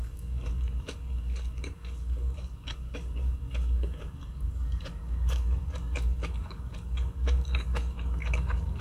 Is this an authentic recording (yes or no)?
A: no